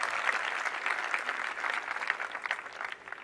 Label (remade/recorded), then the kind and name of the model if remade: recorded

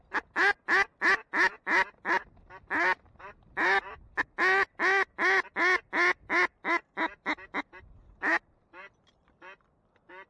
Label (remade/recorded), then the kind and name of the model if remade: recorded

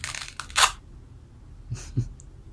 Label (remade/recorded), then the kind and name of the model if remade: recorded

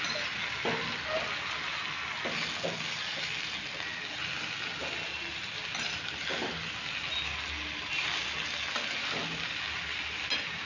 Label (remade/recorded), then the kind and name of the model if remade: recorded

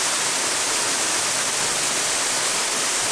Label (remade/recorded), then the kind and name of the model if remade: recorded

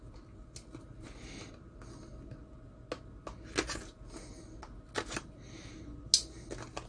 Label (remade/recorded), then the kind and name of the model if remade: recorded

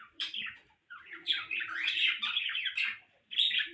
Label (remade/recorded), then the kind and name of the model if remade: remade, vocoder, Vocos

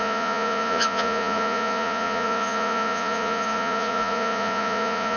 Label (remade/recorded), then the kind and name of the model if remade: remade, vocoder, Vocos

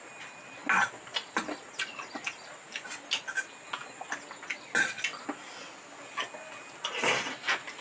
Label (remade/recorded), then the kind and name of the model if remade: recorded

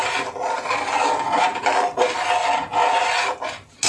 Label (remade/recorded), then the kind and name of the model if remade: recorded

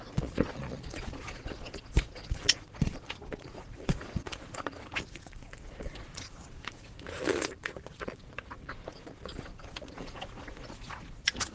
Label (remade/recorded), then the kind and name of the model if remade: remade, vocoder, Vocos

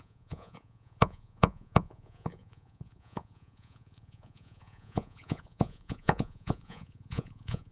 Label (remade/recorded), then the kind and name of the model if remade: remade, vocoder, Vocos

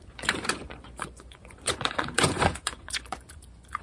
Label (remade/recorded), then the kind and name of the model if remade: remade, vocoder, Vocos